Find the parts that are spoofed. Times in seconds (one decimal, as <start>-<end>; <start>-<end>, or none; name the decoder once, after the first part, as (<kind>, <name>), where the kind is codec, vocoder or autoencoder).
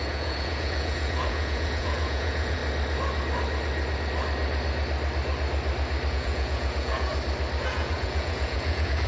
0.0-2.6 (vocoder, Vocos); 6.1-7.1; 7.6-9.1